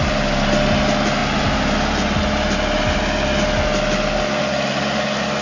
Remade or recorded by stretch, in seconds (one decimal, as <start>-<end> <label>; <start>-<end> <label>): 0.0-5.4 recorded

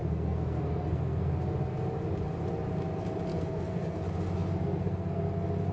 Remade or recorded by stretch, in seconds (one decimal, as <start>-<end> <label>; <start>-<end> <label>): 0.0-1.3 remade; 1.3-3.3 recorded; 3.3-4.0 remade; 4.0-4.4 recorded; 4.4-5.2 remade; 5.2-5.7 recorded

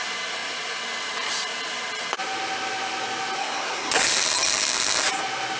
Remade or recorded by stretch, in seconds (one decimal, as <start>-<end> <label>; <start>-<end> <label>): 0.0-3.4 recorded; 3.4-3.9 remade; 3.9-5.6 recorded

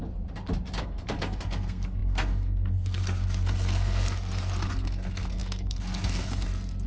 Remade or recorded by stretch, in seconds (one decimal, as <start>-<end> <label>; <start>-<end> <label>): 0.0-0.8 recorded; 0.8-6.9 remade

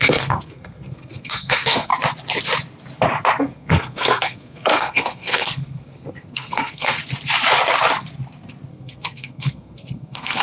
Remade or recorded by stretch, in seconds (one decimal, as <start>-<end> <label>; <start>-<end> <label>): 0.0-1.9 remade; 1.9-3.4 recorded; 3.4-7.0 remade; 7.0-8.7 recorded; 8.7-10.4 remade

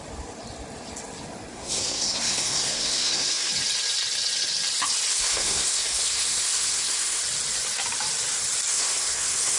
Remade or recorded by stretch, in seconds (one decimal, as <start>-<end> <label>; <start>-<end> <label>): 0.0-1.5 recorded; 1.5-3.5 remade; 3.5-5.1 recorded; 5.1-7.2 remade; 7.2-8.7 recorded; 8.7-9.6 remade

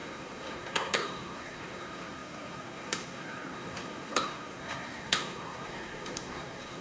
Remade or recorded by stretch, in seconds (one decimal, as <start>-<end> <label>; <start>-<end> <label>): 0.0-6.8 remade

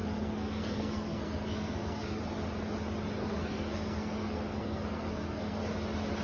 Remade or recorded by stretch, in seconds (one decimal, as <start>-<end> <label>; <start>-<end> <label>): 0.0-2.2 remade; 2.2-3.2 recorded; 3.2-5.6 remade; 5.6-6.2 recorded